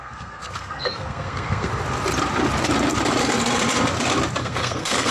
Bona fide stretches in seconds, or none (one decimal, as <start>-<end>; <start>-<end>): 1.7-4.4